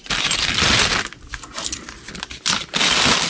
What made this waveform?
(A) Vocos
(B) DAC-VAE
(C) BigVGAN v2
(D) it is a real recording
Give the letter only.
D